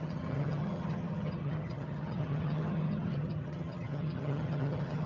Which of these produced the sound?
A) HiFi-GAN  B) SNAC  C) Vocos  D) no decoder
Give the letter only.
A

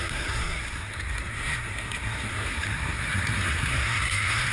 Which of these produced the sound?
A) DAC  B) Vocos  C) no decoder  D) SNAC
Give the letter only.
D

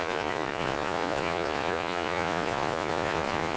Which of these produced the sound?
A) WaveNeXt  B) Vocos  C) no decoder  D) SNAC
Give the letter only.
B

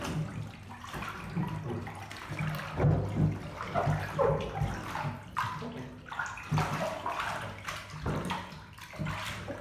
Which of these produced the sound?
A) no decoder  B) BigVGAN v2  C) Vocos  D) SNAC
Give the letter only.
A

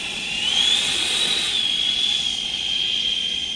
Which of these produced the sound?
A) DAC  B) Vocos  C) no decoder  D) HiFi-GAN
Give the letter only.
B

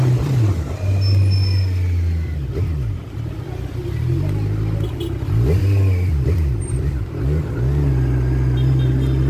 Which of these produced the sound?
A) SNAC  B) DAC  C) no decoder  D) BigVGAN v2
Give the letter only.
C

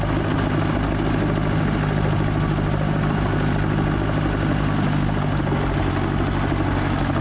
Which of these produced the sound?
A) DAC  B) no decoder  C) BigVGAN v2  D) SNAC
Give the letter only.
B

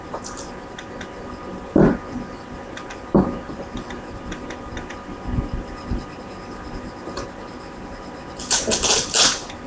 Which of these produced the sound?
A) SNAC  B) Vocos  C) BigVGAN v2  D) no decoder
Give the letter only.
D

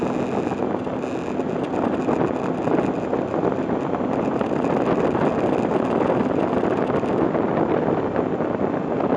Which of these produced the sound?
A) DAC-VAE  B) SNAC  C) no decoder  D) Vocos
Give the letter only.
C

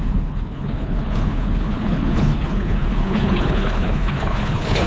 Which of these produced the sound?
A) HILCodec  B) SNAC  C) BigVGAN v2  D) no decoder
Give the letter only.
A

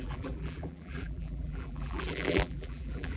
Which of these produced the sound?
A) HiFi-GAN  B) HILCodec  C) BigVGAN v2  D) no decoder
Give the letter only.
C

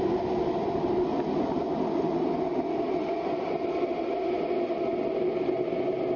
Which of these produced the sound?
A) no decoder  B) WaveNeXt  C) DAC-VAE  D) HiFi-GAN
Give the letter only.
A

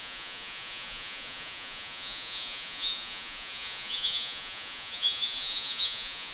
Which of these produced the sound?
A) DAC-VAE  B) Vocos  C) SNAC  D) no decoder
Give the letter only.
B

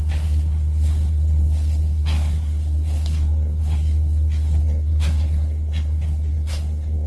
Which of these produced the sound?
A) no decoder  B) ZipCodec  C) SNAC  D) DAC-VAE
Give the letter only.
C